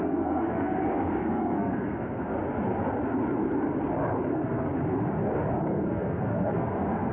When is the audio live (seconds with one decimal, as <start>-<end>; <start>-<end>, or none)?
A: 2.3-4.3; 4.7-5.6